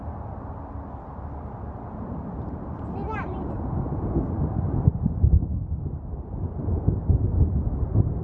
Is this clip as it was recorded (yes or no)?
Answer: yes